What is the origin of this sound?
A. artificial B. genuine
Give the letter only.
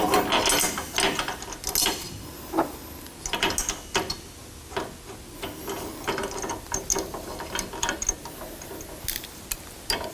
B